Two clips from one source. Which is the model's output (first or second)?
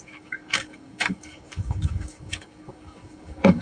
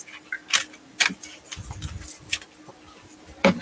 first